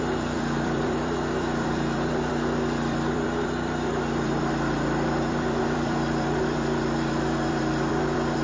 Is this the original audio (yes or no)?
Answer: no